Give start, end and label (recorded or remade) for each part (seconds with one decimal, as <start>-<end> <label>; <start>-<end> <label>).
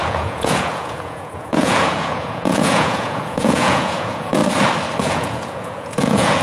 0.0-4.4 remade; 4.4-5.0 recorded; 5.0-6.4 remade